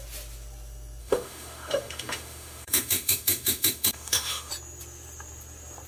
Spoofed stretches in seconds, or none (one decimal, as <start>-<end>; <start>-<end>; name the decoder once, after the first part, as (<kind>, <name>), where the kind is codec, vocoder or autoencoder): 1.0-4.5 (autoencoder, DAC-VAE)